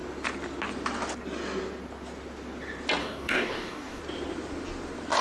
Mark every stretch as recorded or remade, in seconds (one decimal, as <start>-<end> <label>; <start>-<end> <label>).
0.0-3.0 recorded; 3.0-4.0 remade; 4.0-5.2 recorded